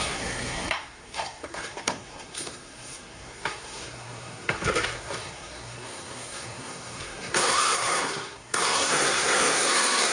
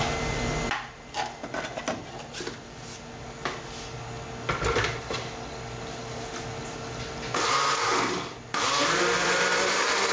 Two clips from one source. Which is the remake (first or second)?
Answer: first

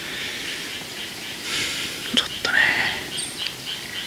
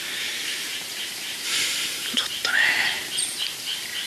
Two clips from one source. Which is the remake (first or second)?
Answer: second